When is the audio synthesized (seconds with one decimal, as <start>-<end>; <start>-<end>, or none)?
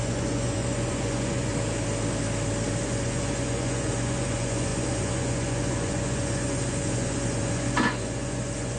0.0-1.5; 2.8-8.8